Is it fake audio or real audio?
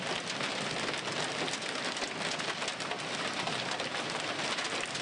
real